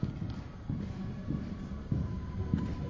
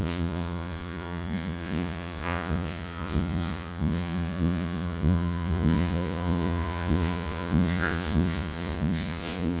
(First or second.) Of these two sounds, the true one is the first